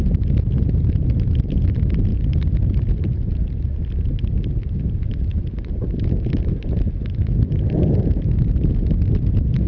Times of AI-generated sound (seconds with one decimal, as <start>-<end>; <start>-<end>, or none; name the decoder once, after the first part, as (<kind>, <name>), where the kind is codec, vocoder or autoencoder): none